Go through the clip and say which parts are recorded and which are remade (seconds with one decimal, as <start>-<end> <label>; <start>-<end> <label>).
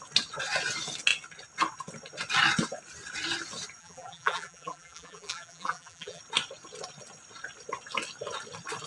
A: 0.0-3.8 recorded; 3.8-6.2 remade; 6.2-8.9 recorded